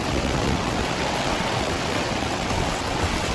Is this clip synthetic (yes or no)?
yes